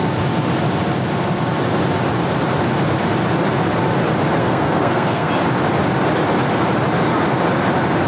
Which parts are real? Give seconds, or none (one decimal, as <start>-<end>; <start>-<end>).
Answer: 0.0-4.4; 5.3-8.1